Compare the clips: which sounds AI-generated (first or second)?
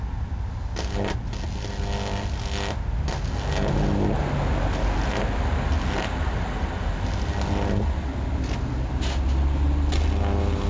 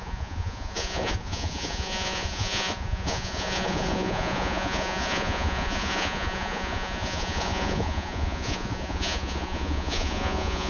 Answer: second